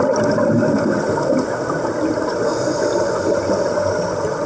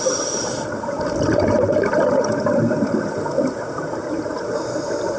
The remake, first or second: second